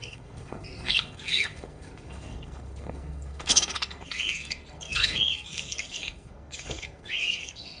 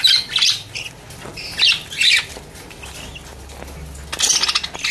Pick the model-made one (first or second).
first